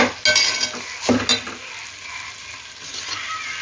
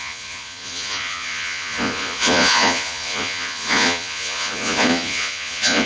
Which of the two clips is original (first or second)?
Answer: first